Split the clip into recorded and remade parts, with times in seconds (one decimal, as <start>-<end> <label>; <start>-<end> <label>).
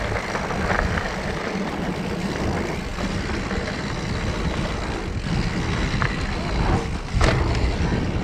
0.0-2.9 remade; 2.9-8.2 recorded